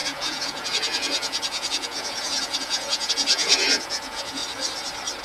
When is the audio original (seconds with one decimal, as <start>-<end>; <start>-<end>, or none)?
4.4-5.2